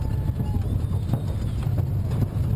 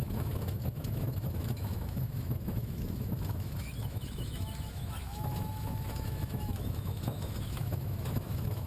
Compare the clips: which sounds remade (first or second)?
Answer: second